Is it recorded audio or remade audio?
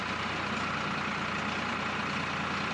recorded